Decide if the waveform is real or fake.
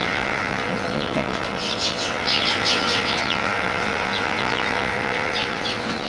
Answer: fake